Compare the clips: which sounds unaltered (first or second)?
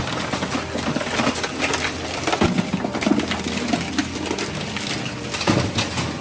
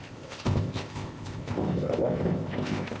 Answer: first